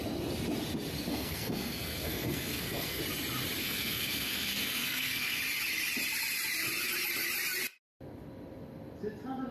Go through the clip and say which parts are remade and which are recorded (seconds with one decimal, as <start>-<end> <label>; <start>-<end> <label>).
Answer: 0.0-1.1 recorded; 1.1-3.0 remade; 3.0-3.6 recorded; 3.6-5.4 remade; 5.4-9.5 recorded